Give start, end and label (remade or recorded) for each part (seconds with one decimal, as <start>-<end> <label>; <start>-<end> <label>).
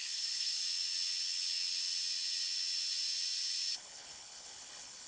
0.0-0.6 remade; 0.6-3.7 recorded; 3.7-5.1 remade